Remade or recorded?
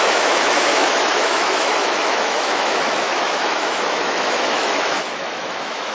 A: remade